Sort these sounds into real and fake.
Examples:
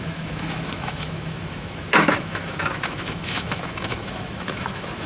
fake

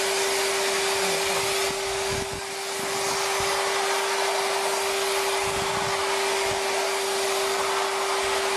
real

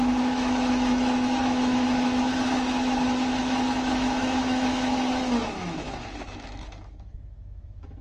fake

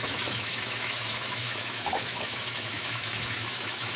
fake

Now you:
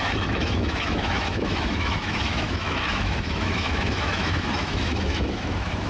fake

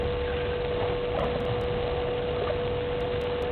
real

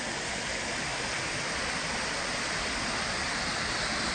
real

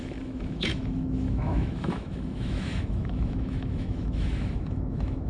fake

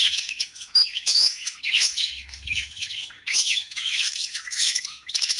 fake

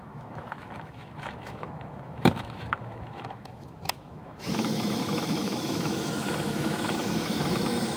fake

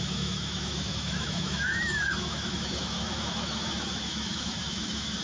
fake